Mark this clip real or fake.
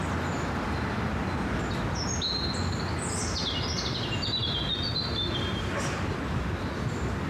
real